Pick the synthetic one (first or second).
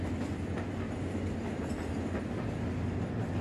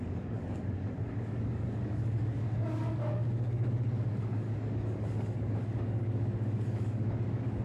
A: second